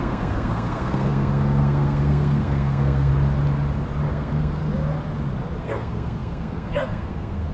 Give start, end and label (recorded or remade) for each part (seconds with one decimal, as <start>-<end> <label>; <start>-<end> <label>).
0.0-3.1 remade; 3.1-4.1 recorded; 4.1-4.6 remade; 4.6-5.6 recorded; 5.6-7.5 remade